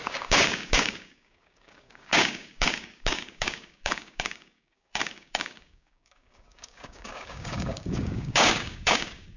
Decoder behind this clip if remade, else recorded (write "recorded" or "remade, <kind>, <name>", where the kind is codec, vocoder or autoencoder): remade, codec, DAC